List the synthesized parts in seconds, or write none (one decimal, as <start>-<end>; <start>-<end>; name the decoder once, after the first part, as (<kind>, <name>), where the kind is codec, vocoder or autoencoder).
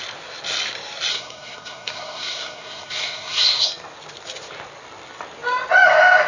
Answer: 1.1-3.7 (codec, SNAC)